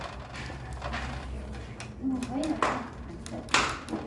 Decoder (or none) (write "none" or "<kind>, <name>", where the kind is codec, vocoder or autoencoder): none